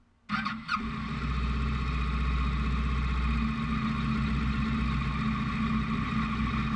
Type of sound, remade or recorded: recorded